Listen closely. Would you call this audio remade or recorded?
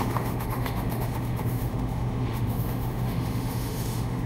remade